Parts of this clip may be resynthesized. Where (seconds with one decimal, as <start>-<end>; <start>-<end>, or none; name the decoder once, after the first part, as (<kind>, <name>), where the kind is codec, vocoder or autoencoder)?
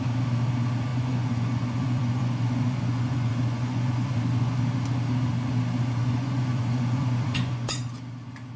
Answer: 0.9-4.6 (vocoder, Vocos); 6.0-7.8